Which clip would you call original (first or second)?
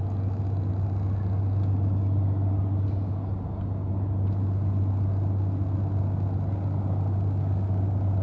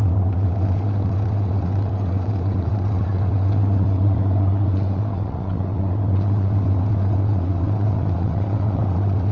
first